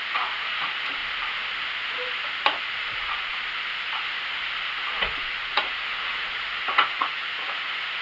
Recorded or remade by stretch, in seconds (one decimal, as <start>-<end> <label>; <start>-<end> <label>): 0.0-1.0 remade; 1.0-2.6 recorded; 2.6-3.3 remade; 3.3-4.6 recorded; 4.6-8.0 remade